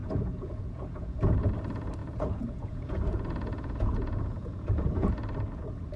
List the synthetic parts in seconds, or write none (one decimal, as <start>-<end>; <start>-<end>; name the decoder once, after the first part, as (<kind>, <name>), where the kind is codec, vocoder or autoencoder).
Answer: 0.0-1.5 (vocoder, Vocos); 2.0-5.1